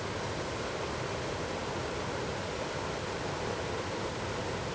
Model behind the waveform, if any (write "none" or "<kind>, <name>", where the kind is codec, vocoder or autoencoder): none